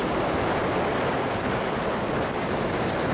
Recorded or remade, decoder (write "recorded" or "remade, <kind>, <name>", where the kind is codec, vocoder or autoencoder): recorded